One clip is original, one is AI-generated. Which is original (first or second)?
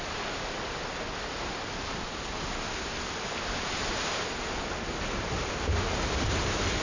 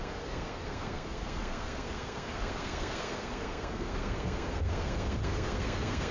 first